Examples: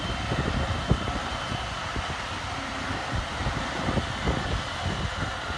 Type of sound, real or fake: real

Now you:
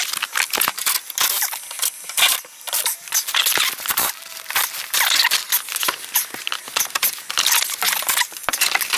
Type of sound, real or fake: real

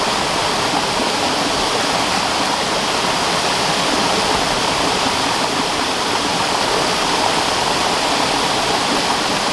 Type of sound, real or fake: real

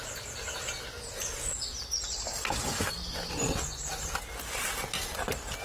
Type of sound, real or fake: real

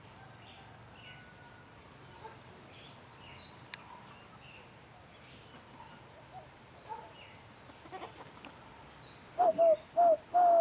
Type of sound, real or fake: real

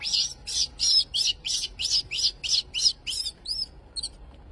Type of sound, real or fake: real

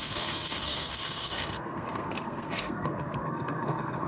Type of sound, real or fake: fake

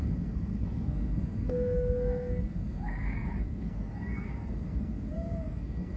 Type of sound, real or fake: fake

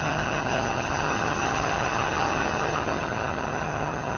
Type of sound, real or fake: fake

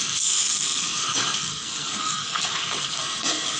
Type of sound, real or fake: fake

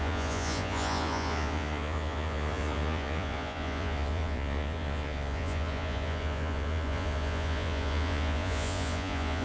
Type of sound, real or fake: fake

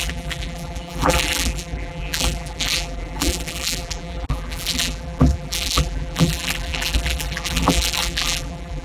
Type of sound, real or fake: fake